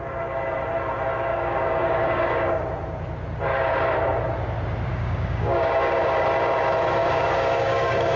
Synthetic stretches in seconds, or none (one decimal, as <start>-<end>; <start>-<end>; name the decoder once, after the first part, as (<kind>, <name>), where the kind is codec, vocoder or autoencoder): 1.3-2.6 (codec, DAC); 4.9-6.0; 7.0-8.2